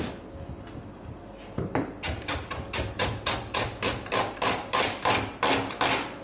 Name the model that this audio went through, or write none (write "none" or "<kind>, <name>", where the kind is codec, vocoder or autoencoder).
none